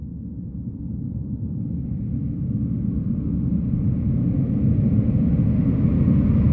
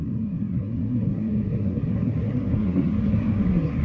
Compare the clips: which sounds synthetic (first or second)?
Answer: second